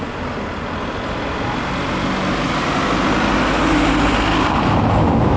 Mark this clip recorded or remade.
recorded